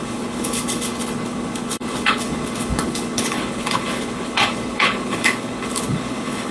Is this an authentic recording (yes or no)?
no